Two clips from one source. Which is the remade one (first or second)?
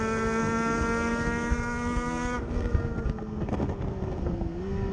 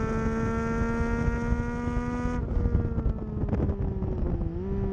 first